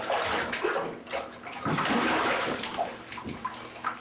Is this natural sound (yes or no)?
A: yes